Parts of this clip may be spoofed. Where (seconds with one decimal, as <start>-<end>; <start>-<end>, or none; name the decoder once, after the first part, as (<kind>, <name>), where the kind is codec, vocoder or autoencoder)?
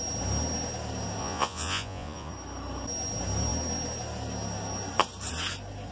1.2-2.3 (vocoder, Vocos)